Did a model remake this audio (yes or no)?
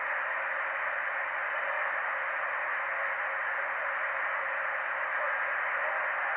no